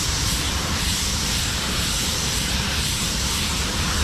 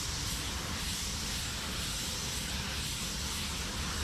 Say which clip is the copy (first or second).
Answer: first